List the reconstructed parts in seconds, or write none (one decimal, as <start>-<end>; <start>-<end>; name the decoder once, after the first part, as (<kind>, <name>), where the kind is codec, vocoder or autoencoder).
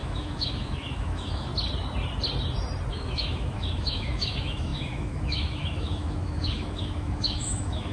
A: 0.0-1.5 (autoencoder, DAC-VAE); 2.9-7.9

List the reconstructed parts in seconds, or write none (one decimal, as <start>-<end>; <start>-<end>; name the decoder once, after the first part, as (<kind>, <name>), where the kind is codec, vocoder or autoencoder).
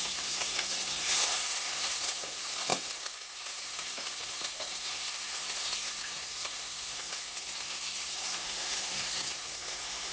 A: 0.0-10.1 (codec, SNAC)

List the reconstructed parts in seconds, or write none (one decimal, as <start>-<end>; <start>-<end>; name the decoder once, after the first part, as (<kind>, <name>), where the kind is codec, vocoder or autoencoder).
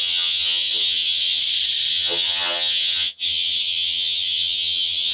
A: 0.0-1.4 (vocoder, HiFi-GAN); 1.9-5.1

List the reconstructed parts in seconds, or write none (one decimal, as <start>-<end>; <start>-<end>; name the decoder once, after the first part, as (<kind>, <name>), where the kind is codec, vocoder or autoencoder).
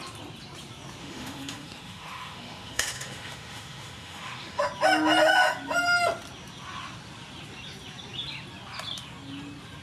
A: 1.0-4.6 (autoencoder, DAC-VAE)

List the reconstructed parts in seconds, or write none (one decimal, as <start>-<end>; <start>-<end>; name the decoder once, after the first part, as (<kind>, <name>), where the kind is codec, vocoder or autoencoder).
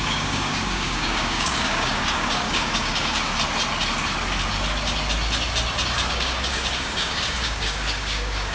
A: 0.0-3.3 (codec, DAC); 6.1-8.5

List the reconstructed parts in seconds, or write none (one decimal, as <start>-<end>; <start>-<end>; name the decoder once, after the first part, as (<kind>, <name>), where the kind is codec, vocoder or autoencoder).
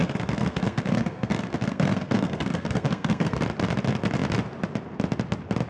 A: 0.0-3.4 (codec, SNAC)